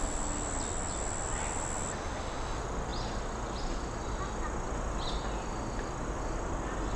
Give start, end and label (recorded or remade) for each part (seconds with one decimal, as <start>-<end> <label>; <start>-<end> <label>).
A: 0.0-7.0 recorded